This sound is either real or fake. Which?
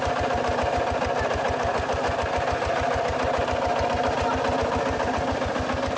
real